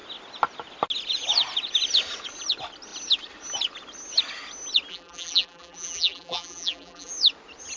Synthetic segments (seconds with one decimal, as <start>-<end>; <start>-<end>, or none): 4.9-7.1